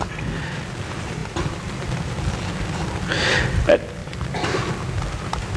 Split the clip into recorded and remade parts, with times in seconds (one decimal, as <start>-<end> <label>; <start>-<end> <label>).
0.0-1.2 recorded; 1.2-3.0 remade; 3.0-4.0 recorded; 4.0-4.7 remade; 4.7-5.6 recorded